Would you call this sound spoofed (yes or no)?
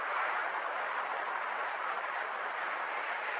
no